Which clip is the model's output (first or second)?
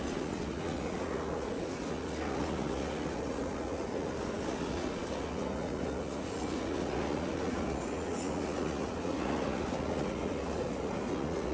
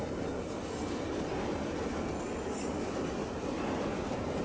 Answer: first